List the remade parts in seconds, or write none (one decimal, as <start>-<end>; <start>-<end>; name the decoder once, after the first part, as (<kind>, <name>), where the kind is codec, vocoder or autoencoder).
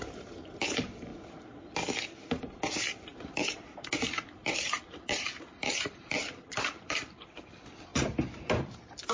0.0-1.1 (vocoder, BigVGAN v2); 2.3-7.9; 8.6-9.1